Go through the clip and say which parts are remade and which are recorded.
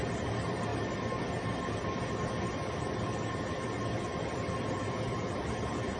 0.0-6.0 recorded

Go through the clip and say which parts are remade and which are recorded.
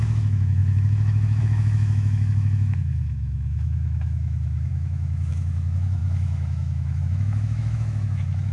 0.0-8.5 remade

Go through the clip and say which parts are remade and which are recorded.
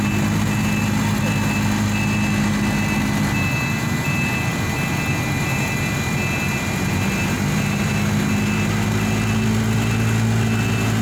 0.0-11.0 recorded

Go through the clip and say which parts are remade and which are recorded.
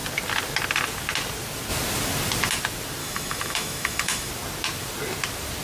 0.0-3.0 recorded; 3.0-4.3 remade; 4.3-5.6 recorded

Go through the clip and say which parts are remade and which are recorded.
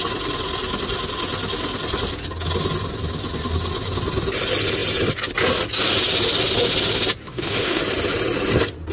0.0-7.3 recorded; 7.3-7.8 remade; 7.8-8.9 recorded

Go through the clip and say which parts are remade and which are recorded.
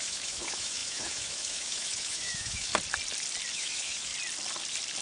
0.0-2.7 remade; 2.7-3.5 recorded; 3.5-4.1 remade; 4.1-5.0 recorded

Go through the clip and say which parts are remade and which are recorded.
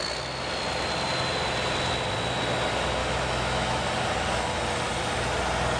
0.0-3.0 recorded; 3.0-3.8 remade; 3.8-5.8 recorded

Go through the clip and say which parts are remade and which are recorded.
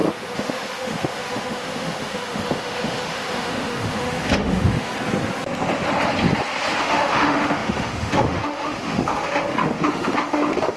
0.0-4.9 remade; 4.9-6.8 recorded; 6.8-10.8 remade